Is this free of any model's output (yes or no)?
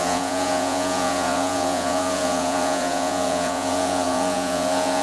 no